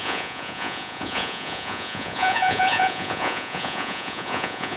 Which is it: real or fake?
fake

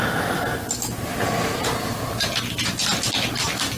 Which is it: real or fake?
real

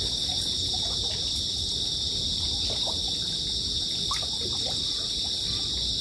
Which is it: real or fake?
real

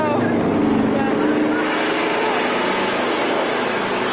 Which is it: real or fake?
real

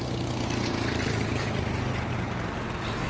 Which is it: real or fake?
real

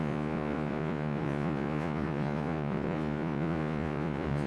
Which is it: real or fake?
fake